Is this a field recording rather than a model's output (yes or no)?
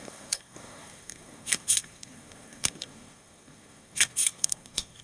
no